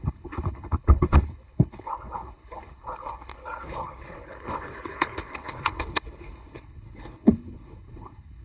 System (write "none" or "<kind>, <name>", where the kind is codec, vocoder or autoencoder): codec, HILCodec